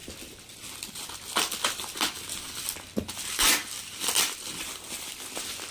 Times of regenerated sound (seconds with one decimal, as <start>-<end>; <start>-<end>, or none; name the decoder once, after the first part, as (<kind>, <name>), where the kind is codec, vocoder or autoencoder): none